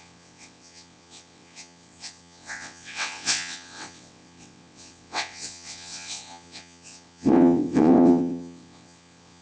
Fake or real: fake